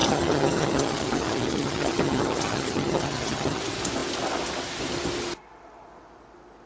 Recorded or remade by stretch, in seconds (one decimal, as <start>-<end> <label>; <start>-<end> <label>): 0.0-3.6 remade; 3.6-6.7 recorded